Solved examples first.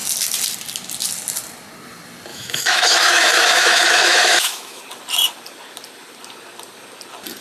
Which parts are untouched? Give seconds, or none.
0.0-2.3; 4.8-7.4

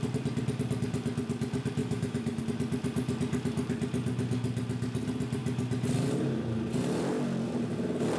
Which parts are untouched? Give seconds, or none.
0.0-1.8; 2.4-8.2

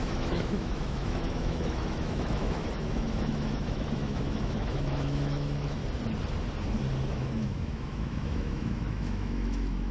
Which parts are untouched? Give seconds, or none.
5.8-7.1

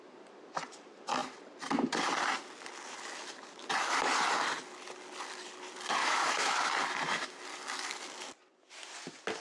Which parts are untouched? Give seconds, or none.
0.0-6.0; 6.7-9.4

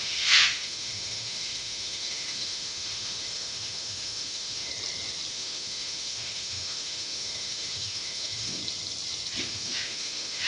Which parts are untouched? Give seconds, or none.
4.7-5.3; 8.6-9.4

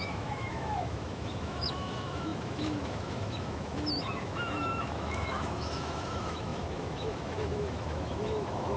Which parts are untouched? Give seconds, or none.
none

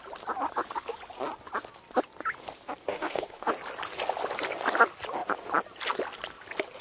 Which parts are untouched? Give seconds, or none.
0.0-2.9; 3.5-6.8